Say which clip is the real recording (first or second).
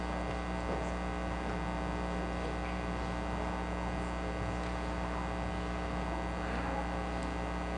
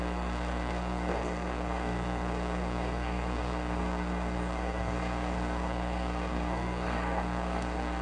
first